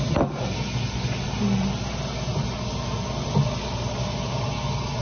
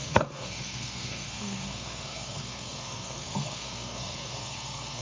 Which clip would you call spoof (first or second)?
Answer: second